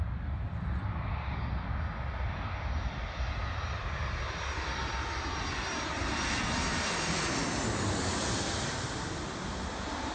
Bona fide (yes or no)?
yes